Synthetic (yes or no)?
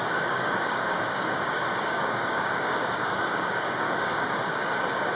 yes